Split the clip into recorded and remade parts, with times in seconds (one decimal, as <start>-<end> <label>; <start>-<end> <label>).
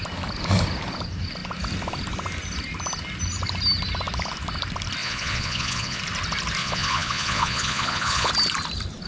0.0-5.0 recorded; 5.0-6.0 remade; 6.0-6.6 recorded; 6.6-8.3 remade; 8.3-9.1 recorded